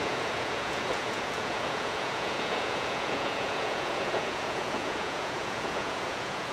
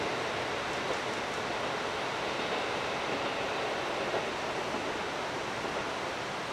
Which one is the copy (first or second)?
first